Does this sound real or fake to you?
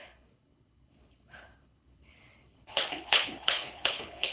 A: fake